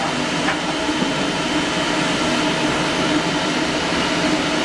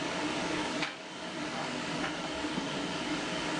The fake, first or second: second